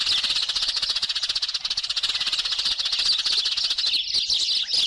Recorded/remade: recorded